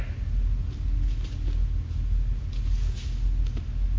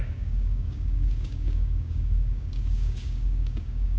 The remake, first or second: second